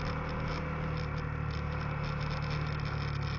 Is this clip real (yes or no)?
yes